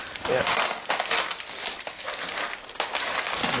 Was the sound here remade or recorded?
recorded